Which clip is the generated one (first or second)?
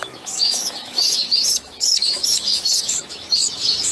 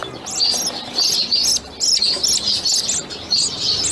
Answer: first